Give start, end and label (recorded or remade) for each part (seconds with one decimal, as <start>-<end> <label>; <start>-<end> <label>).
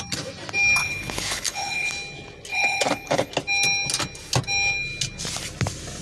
0.0-0.8 recorded; 0.8-1.9 remade; 1.9-2.5 recorded; 2.5-3.3 remade; 3.3-6.0 recorded